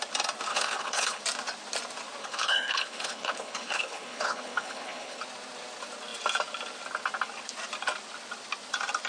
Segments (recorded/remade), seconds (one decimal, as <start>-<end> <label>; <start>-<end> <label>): 0.0-0.5 recorded; 0.5-1.2 remade; 1.2-2.2 recorded; 2.2-5.2 remade; 5.2-9.1 recorded

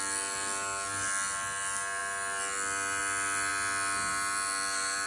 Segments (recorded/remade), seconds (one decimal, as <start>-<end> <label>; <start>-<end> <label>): 0.0-5.1 recorded

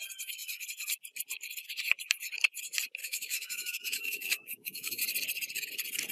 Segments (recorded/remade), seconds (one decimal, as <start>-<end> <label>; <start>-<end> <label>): 0.0-3.0 recorded; 3.0-5.0 remade; 5.0-6.1 recorded